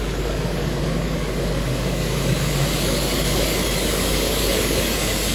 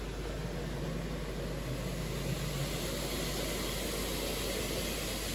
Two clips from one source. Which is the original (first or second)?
second